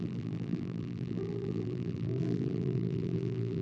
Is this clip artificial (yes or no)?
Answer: yes